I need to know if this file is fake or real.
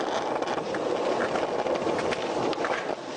real